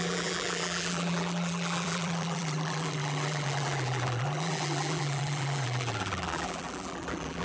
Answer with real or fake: fake